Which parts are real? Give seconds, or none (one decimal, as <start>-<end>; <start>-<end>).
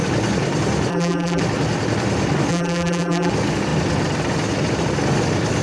0.0-0.9; 1.4-2.5; 3.3-5.6